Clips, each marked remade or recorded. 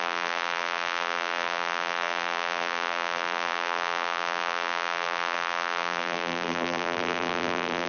remade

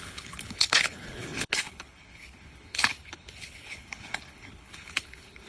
remade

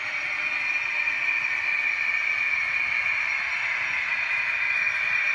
recorded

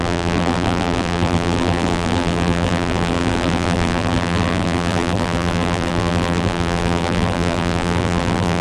remade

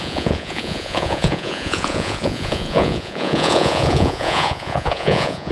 remade